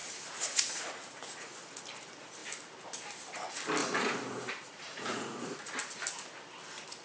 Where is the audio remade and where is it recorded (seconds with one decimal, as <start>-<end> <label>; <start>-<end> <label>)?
0.0-1.8 remade; 1.8-3.8 recorded; 3.8-5.7 remade; 5.7-7.0 recorded